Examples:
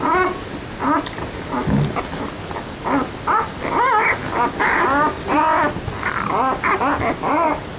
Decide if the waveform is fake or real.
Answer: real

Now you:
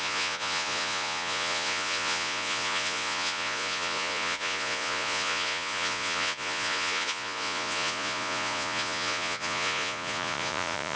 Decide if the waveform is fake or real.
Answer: fake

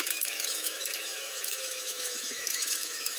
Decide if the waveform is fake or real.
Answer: fake